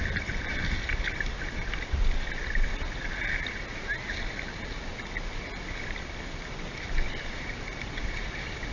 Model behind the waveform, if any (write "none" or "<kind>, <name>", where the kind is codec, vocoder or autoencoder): none